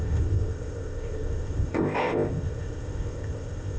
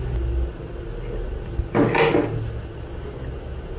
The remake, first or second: first